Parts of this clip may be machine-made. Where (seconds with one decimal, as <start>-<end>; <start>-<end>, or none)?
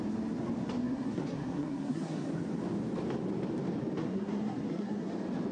0.8-2.3; 4.0-5.1